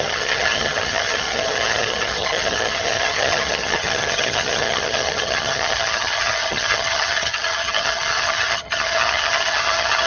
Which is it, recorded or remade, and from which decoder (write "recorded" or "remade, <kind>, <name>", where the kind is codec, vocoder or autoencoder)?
remade, vocoder, HiFi-GAN